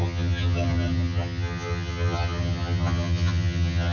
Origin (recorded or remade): remade